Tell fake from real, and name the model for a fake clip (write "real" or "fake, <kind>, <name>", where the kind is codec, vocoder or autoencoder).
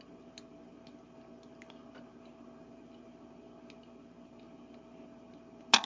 real